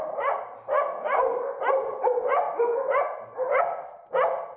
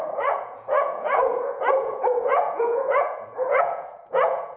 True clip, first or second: first